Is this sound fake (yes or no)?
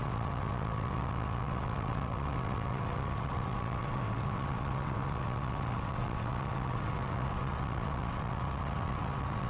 yes